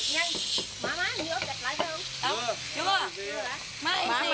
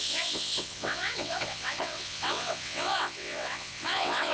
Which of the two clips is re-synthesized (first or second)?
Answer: second